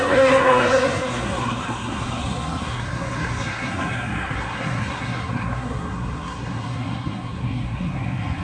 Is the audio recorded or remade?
remade